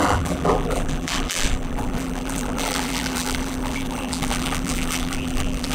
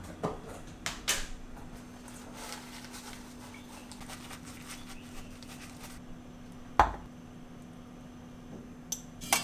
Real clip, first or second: second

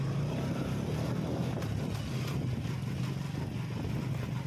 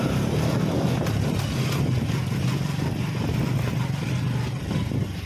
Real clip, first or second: first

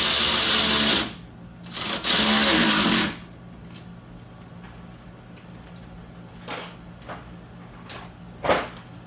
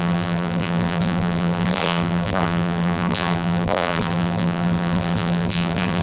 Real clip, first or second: first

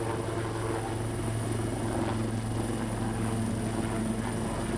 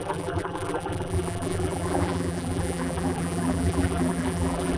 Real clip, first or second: first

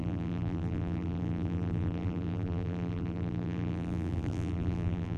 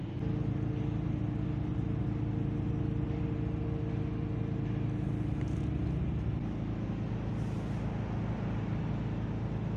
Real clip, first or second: second